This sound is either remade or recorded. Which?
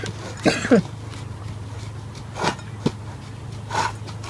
recorded